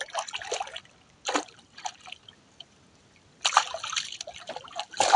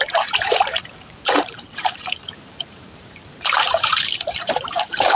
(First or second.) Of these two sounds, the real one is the first